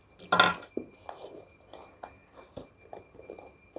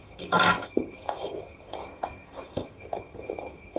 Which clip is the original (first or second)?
first